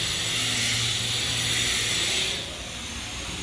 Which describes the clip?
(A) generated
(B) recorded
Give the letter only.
B